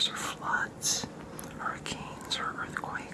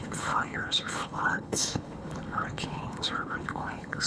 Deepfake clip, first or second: second